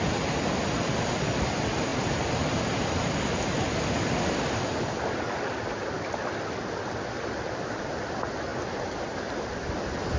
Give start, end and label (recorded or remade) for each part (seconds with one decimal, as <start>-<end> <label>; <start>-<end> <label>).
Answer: 0.0-1.9 recorded; 1.9-3.2 remade; 3.2-10.2 recorded